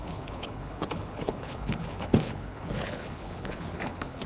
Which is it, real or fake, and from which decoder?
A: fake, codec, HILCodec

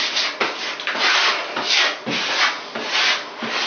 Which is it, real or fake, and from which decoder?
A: real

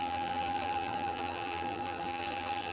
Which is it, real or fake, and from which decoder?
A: fake, vocoder, BigVGAN v2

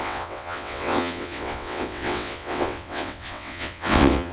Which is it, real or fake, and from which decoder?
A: fake, vocoder, WaveNeXt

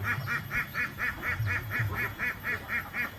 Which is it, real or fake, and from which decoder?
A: real